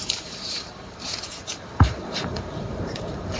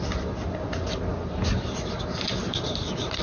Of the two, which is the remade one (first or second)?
first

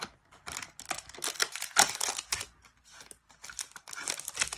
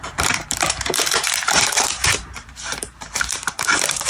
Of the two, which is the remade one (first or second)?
second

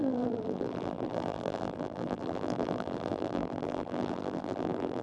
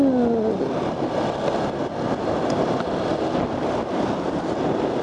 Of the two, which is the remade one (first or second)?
first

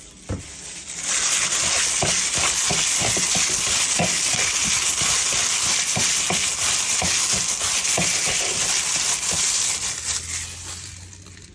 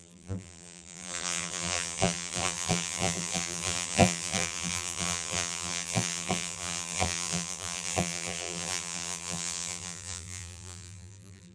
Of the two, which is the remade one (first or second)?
second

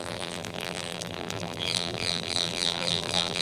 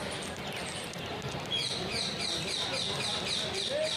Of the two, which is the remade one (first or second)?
first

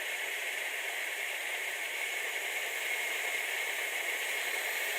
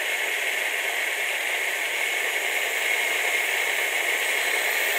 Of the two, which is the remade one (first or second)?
first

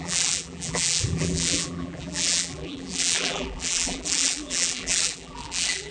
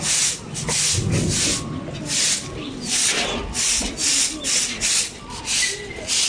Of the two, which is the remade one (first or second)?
first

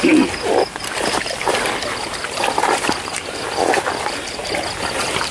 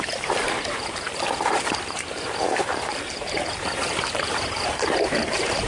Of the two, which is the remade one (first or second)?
second